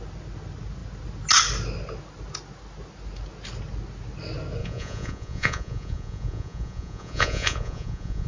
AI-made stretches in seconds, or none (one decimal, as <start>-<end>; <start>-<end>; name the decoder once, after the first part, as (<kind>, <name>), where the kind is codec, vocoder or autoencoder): 4.6-8.3 (vocoder, Vocos)